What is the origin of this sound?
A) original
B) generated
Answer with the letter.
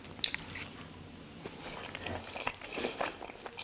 A